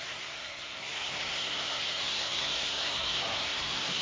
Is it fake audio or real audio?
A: fake